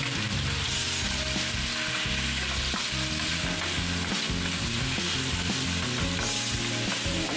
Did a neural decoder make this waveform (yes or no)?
no